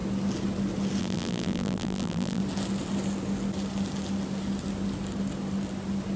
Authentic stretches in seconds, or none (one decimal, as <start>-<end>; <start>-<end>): 0.0-1.0; 2.4-6.2